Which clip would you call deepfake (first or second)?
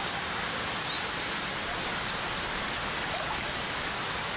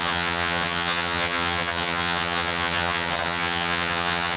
second